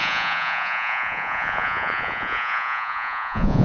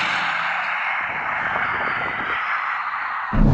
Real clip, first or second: second